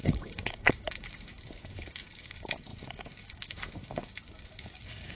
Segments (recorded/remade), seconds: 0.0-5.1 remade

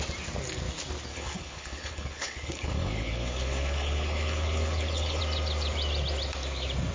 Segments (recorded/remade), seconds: 0.0-1.1 recorded; 1.1-5.2 remade; 5.2-6.9 recorded

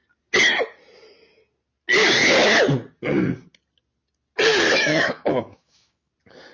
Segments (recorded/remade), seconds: 0.0-4.5 recorded; 4.5-6.1 remade; 6.1-6.5 recorded

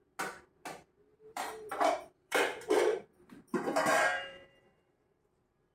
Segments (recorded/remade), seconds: 0.0-1.1 recorded; 1.1-2.4 remade; 2.4-2.9 recorded; 2.9-4.9 remade; 4.9-5.7 recorded

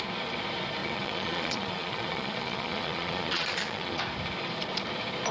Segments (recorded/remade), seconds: 0.0-0.8 recorded; 0.8-4.0 remade; 4.0-5.3 recorded